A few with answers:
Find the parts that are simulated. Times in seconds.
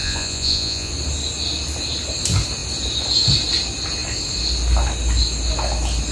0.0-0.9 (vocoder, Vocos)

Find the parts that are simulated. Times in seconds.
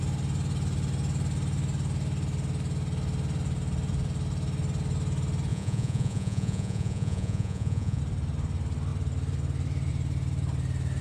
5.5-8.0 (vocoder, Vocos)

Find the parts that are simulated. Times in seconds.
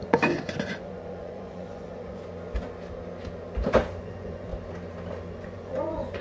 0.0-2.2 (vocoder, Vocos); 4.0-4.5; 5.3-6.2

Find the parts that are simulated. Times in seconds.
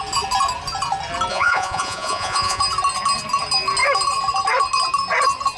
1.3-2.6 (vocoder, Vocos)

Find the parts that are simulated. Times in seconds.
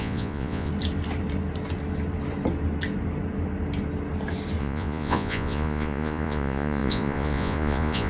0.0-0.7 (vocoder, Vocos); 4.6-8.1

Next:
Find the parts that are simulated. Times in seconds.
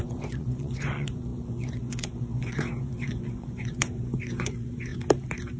0.0-4.9 (vocoder, Vocos)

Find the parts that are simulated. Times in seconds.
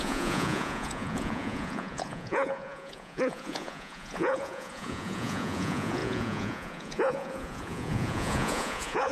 0.0-9.1 (vocoder, Vocos)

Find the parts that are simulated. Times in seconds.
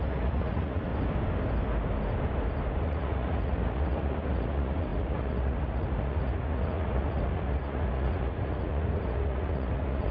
0.0-0.9 (vocoder, Vocos); 2.8-10.1